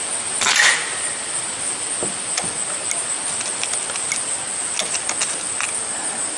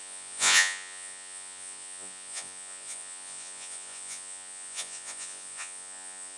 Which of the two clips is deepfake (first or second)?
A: second